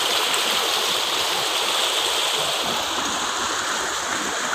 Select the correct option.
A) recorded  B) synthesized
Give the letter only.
A